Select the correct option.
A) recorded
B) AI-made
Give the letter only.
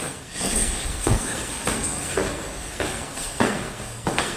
B